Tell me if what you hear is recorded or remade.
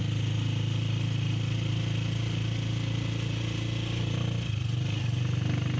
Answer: recorded